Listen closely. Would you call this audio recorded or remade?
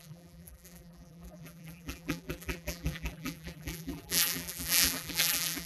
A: remade